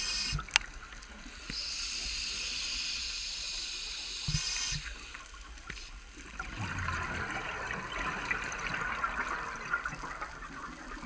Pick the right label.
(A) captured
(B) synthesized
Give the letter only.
A